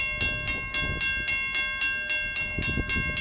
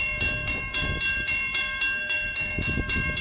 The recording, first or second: first